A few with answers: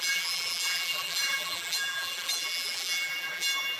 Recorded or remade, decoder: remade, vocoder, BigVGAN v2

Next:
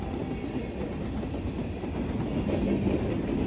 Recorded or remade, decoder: recorded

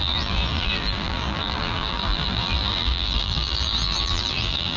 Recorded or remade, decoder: remade, vocoder, BigVGAN v2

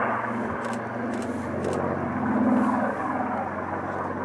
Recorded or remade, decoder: recorded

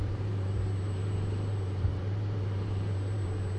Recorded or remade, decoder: remade, vocoder, BigVGAN v2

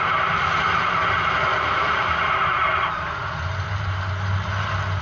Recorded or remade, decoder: recorded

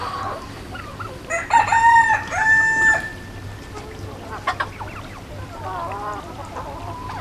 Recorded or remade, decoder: recorded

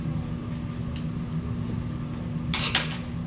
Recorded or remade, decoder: recorded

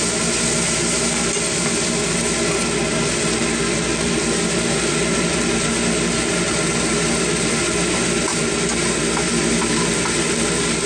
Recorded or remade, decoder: recorded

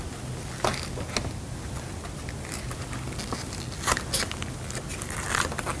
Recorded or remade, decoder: recorded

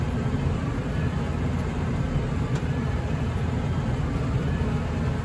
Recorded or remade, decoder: recorded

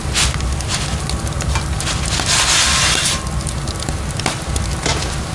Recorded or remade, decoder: recorded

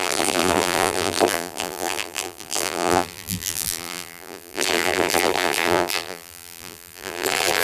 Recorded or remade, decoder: remade, vocoder, BigVGAN v2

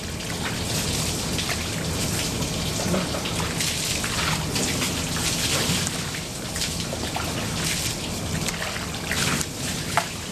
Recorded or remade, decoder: recorded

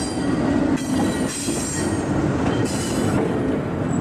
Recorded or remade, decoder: recorded